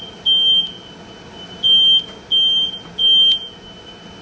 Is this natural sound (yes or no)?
yes